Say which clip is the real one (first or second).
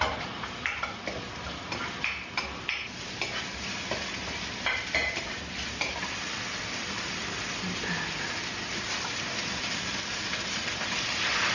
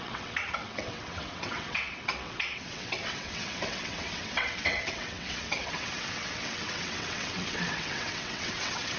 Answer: first